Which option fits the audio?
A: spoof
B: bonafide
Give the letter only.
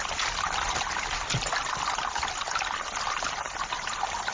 B